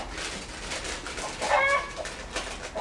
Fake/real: real